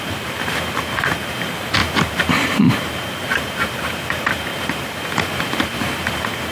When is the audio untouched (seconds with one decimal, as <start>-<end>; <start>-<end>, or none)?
none